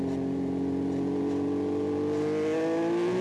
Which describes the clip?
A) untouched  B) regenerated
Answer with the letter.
A